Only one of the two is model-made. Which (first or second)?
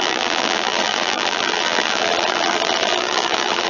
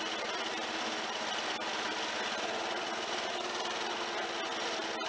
first